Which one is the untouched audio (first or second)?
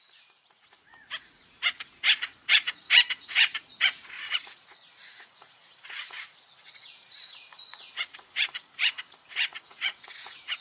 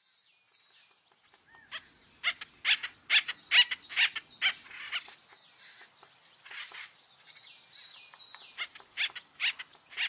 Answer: second